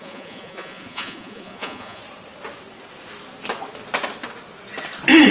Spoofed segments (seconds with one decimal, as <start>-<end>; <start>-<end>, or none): 0.0-2.0